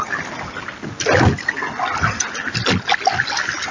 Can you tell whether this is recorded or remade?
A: recorded